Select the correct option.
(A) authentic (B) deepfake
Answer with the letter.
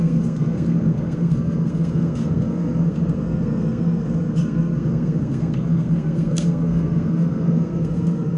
B